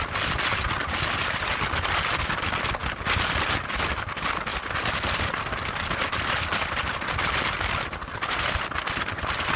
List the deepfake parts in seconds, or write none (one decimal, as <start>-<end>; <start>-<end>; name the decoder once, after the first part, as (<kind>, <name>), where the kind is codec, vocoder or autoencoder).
none